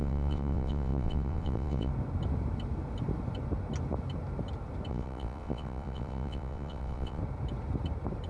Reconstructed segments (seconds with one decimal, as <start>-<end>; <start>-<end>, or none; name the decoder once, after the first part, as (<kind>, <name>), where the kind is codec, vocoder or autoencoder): 0.0-1.9 (vocoder, WaveNeXt); 4.9-7.2